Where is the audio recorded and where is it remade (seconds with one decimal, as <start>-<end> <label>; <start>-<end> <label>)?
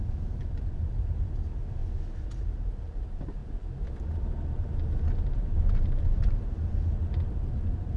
0.0-1.8 remade; 1.8-2.4 recorded; 2.4-3.4 remade; 3.4-4.0 recorded; 4.0-8.0 remade